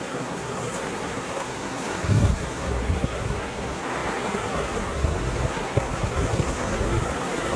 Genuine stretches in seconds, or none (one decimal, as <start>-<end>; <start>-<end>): none